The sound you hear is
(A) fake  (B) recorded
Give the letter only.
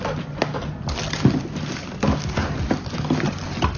B